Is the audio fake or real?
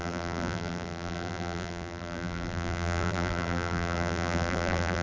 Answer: fake